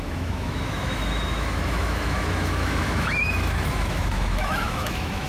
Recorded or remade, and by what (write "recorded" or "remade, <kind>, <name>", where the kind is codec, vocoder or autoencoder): remade, autoencoder, DAC-VAE